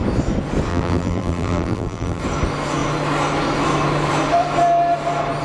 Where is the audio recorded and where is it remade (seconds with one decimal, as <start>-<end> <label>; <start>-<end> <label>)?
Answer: 0.0-0.7 recorded; 0.7-2.2 remade; 2.2-5.4 recorded